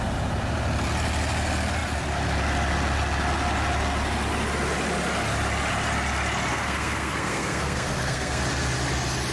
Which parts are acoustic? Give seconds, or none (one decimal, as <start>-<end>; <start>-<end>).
0.0-6.5; 8.4-9.3